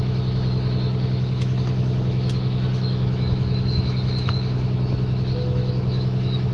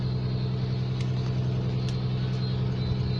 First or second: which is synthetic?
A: first